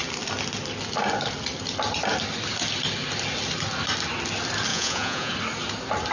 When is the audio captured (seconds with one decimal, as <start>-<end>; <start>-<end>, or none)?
0.0-4.7; 5.3-6.1